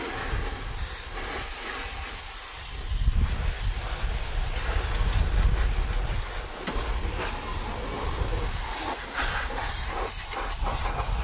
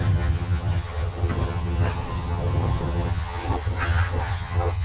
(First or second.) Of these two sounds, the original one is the first